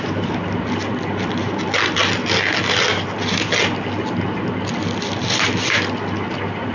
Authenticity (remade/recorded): recorded